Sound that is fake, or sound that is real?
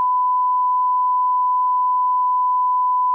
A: real